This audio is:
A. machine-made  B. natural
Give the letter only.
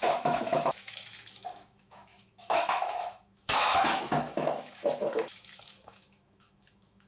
A